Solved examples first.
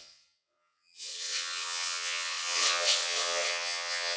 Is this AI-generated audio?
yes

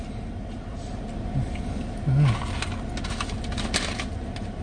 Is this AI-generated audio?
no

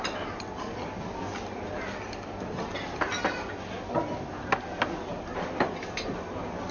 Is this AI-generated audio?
no